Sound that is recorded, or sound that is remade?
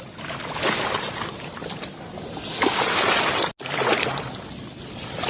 recorded